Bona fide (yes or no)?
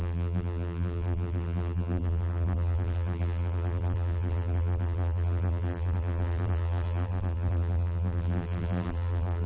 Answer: no